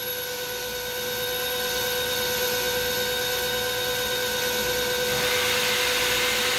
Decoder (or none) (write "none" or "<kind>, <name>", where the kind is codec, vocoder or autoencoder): none